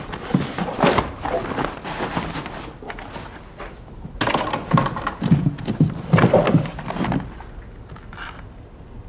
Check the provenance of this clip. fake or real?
real